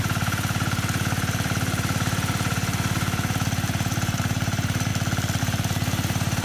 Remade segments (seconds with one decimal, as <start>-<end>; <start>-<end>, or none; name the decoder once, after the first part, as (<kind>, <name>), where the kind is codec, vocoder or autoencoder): 0.0-4.9 (vocoder, BigVGAN v2); 5.4-6.4